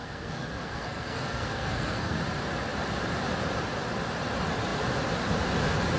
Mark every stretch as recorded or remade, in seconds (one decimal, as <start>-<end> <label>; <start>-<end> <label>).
0.0-2.2 remade; 2.2-6.0 recorded